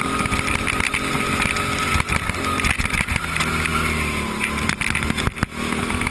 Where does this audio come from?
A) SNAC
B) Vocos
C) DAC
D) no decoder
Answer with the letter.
D